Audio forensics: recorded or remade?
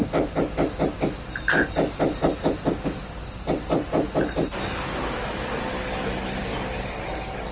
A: recorded